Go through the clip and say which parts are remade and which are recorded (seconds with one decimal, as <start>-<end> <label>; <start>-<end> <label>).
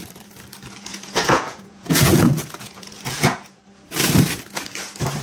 0.0-0.9 recorded; 0.9-3.6 remade; 3.6-5.2 recorded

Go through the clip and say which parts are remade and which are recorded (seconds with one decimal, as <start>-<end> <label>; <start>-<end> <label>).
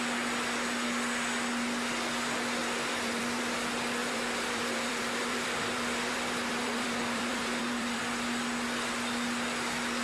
0.0-2.6 recorded; 2.6-3.4 remade; 3.4-4.0 recorded; 4.0-8.0 remade; 8.0-10.0 recorded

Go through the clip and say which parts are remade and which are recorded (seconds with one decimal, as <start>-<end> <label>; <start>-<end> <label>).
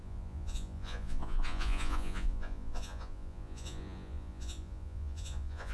0.0-5.7 remade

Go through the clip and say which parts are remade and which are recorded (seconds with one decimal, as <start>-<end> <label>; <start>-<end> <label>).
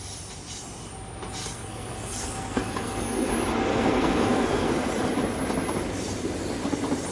0.0-1.4 recorded; 1.4-3.3 remade; 3.3-3.7 recorded; 3.7-4.9 remade; 4.9-7.1 recorded